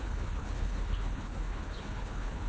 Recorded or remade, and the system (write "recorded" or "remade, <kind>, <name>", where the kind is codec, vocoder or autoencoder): remade, codec, HILCodec